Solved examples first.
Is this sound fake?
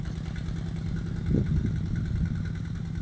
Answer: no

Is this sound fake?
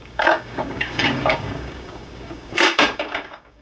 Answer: yes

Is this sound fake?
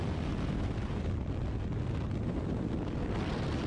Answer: no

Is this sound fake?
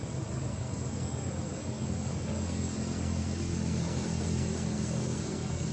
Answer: yes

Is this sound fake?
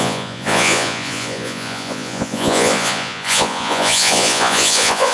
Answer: yes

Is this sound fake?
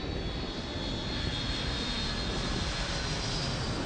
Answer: no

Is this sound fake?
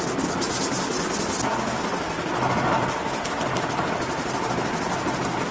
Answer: no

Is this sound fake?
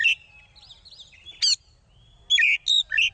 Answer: no